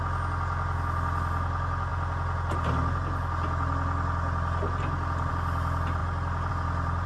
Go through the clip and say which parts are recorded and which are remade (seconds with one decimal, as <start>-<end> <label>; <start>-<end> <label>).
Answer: 0.0-7.1 recorded